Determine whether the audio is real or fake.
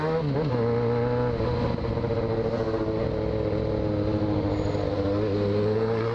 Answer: real